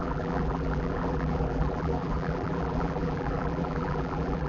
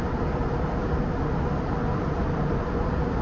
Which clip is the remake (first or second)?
first